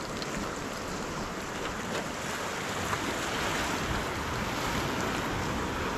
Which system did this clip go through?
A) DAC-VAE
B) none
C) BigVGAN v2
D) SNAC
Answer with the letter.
B